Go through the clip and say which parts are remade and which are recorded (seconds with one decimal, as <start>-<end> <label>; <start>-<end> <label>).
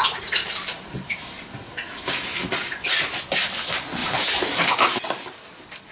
0.0-1.4 remade; 1.4-4.0 recorded; 4.0-4.7 remade; 4.7-5.9 recorded